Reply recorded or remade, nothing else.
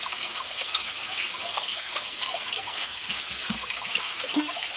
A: remade